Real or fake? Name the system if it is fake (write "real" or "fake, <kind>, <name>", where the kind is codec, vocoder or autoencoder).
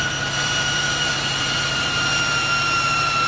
fake, vocoder, BigVGAN v2